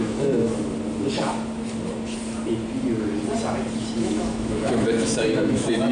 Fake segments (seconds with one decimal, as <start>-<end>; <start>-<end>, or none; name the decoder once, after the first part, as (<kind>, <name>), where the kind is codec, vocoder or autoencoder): 0.0-0.5 (autoencoder, DAC-VAE); 4.0-5.9